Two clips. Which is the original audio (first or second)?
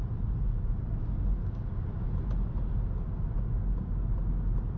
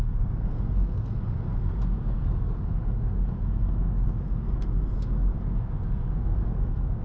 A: first